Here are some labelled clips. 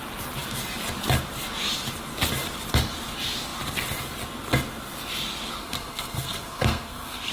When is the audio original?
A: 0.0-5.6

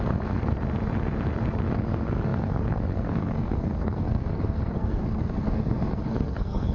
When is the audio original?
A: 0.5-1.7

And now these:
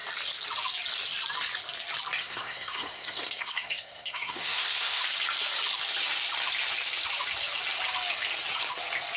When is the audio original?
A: 0.0-2.2; 5.0-9.2